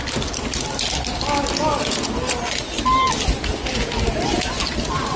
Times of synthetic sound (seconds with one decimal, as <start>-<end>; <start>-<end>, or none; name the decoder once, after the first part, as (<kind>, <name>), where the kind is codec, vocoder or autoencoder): none